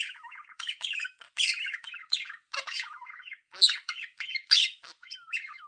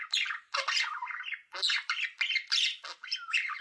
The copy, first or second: first